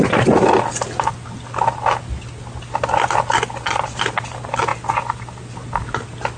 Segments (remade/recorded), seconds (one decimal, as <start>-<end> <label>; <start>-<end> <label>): 0.0-6.4 recorded